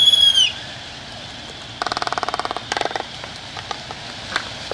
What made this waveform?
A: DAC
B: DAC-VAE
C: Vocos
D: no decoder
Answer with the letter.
D